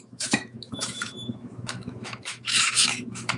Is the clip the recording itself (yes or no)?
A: no